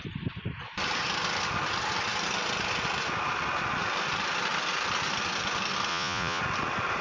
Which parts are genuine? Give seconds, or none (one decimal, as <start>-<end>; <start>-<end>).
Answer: 0.0-5.9; 6.4-7.0

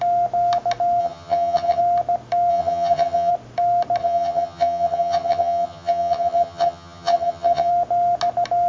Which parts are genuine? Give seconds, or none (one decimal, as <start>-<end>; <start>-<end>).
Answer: 0.0-1.0; 1.8-2.5; 3.3-4.0; 7.7-8.7

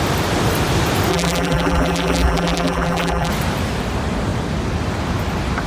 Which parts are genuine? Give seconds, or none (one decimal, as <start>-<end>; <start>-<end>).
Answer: 0.0-1.1; 3.3-5.7

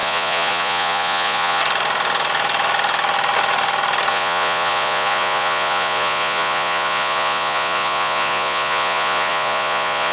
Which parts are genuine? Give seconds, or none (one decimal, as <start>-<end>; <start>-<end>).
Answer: 1.6-4.1

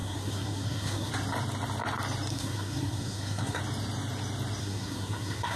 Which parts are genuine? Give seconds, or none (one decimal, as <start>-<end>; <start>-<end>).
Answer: 1.1-2.3; 3.6-4.6

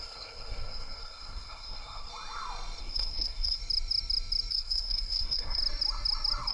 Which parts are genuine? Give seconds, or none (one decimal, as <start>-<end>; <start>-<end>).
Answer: 2.1-2.8; 3.6-4.5; 5.6-6.5